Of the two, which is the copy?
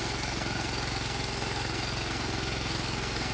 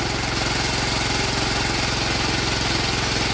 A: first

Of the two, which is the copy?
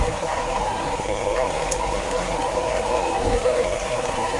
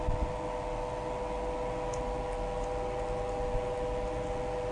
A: first